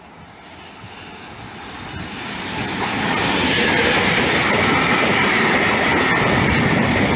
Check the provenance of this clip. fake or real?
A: real